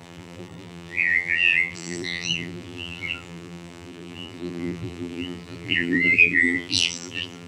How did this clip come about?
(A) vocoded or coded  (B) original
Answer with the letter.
A